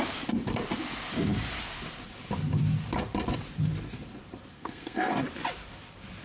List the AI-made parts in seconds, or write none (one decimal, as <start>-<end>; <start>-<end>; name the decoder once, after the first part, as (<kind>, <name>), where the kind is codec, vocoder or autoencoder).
4.5-5.1 (codec, SNAC)